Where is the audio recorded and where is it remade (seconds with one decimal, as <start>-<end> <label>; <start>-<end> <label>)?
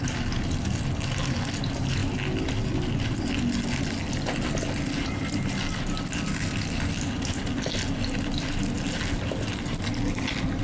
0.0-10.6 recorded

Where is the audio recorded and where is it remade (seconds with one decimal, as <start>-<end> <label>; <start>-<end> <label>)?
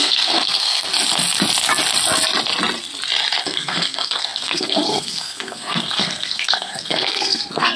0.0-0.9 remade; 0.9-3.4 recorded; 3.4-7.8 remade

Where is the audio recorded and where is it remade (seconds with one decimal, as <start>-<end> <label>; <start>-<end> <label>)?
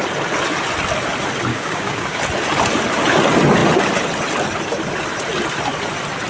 0.0-1.5 recorded; 1.5-2.2 remade; 2.2-6.3 recorded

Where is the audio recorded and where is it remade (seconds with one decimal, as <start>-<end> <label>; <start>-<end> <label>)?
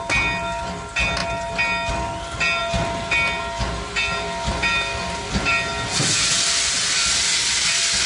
0.0-8.1 recorded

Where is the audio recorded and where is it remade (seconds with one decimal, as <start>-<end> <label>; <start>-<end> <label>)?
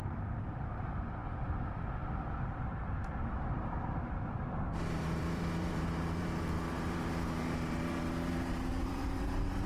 0.0-1.2 remade; 1.2-2.5 recorded; 2.5-9.7 remade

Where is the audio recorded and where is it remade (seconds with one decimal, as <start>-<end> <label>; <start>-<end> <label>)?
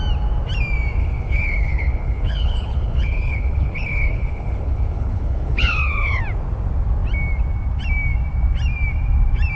0.0-1.0 recorded; 1.0-6.2 remade; 6.2-9.6 recorded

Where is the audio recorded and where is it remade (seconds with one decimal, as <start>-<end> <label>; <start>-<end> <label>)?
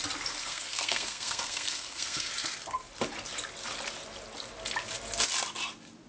0.0-0.4 recorded; 0.4-2.3 remade; 2.3-6.1 recorded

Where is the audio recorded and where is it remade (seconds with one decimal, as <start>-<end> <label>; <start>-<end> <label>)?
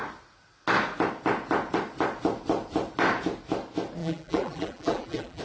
0.0-4.0 recorded; 4.0-5.4 remade